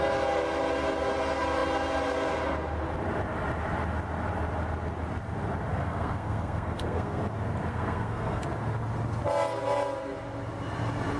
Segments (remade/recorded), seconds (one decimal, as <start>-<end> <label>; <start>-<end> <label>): 0.0-5.7 recorded; 5.7-7.2 remade; 7.2-7.7 recorded; 7.7-8.4 remade; 8.4-11.2 recorded